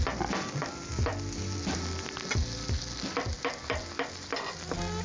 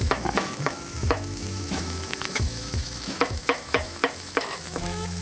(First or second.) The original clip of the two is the first